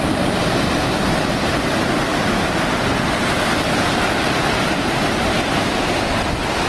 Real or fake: real